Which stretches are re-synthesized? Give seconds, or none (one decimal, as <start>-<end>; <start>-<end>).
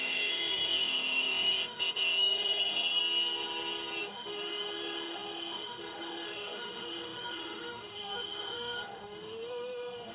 0.0-3.0; 4.0-10.1